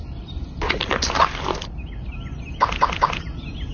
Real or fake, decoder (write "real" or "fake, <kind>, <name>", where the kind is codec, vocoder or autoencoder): real